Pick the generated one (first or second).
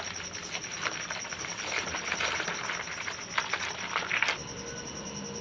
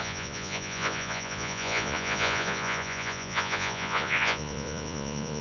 second